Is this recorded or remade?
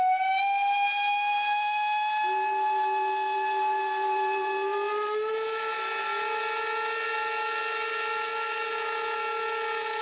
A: recorded